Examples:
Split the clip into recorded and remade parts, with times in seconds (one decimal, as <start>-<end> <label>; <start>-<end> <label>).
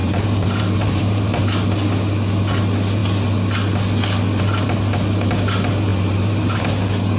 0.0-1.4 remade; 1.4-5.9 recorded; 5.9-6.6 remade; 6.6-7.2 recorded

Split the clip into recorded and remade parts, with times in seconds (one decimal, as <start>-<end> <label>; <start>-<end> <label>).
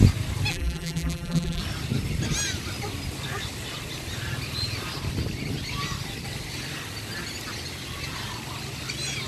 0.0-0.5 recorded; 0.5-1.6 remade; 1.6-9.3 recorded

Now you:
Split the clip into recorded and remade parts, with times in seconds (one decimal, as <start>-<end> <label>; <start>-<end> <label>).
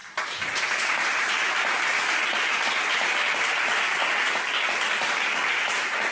0.0-1.9 remade; 1.9-5.6 recorded; 5.6-6.1 remade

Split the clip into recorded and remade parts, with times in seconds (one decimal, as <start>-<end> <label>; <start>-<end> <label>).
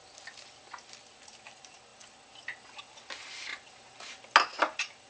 0.0-5.1 recorded